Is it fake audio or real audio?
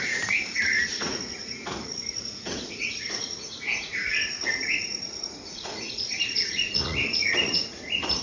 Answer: fake